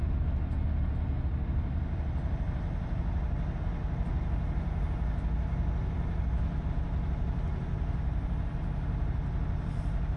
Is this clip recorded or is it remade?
recorded